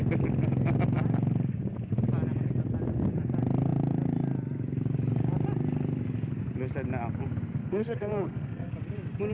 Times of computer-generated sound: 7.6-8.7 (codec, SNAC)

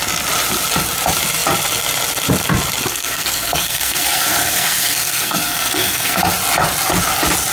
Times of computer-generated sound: 2.9-6.2 (codec, SNAC)

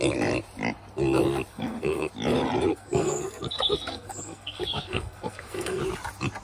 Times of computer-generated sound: 1.5-2.1 (codec, SNAC); 2.7-5.8

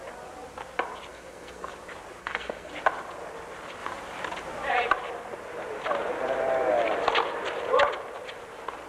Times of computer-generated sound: 1.1-1.7 (codec, SNAC); 2.2-2.7

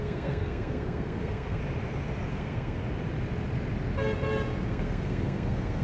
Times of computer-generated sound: 0.0-1.6 (codec, SNAC); 2.3-2.8; 4.7-5.8

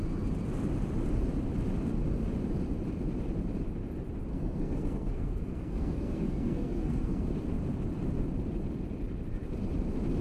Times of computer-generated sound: 4.3-7.3 (codec, SNAC)

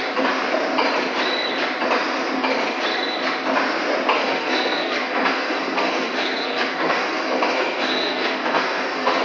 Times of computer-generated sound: 4.2-9.2 (codec, SNAC)